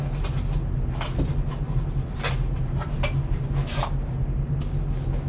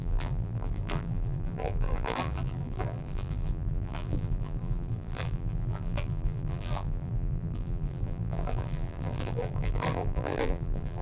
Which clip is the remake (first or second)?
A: second